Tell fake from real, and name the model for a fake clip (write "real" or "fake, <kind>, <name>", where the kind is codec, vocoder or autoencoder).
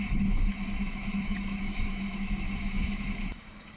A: fake, autoencoder, DAC-VAE